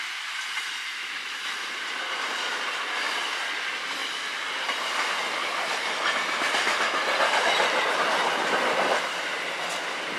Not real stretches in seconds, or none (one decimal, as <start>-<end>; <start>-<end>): none